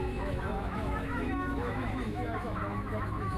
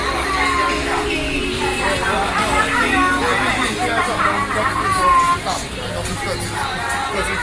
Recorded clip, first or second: second